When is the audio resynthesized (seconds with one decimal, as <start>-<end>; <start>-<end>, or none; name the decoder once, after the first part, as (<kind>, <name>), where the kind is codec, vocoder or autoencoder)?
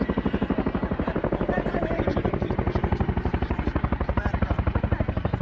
0.0-5.4 (vocoder, BigVGAN v2)